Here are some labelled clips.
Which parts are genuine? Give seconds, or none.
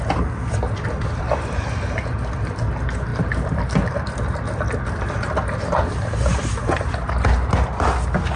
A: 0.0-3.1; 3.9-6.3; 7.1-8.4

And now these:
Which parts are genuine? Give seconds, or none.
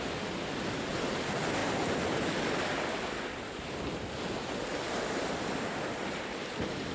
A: 0.0-6.9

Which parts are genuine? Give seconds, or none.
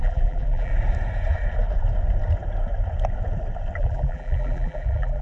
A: 0.7-3.8